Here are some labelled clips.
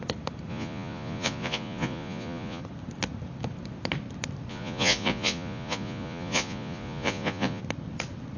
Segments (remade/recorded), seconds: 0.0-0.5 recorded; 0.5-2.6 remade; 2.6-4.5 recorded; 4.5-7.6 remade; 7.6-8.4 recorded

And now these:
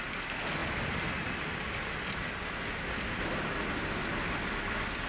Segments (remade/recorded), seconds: 0.0-5.1 recorded